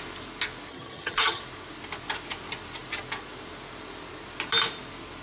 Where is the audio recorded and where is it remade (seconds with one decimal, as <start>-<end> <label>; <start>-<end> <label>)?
0.0-0.7 recorded; 0.7-1.4 remade; 1.4-5.2 recorded